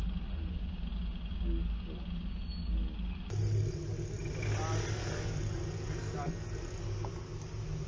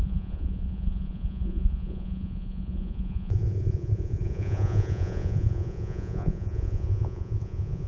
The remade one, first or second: second